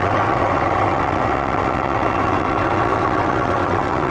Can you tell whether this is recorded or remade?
remade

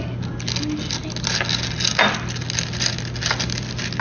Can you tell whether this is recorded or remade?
recorded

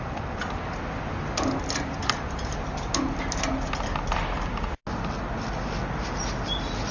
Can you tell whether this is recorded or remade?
recorded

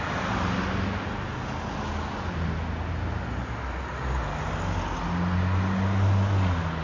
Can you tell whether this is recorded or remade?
recorded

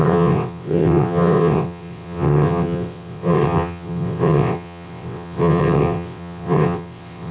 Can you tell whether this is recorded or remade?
remade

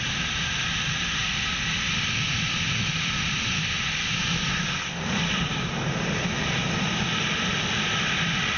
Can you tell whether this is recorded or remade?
recorded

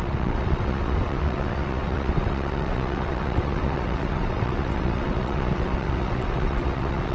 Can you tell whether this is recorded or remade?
remade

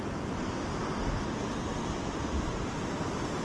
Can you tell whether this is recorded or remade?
recorded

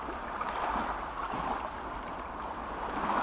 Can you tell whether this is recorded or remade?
recorded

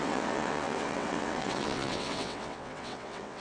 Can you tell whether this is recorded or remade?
remade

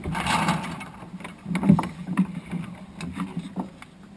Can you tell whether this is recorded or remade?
recorded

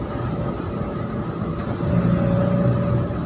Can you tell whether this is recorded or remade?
recorded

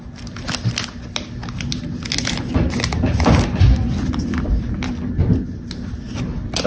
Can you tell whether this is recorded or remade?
recorded